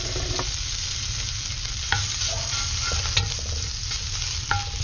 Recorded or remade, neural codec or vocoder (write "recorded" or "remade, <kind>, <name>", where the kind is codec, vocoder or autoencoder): recorded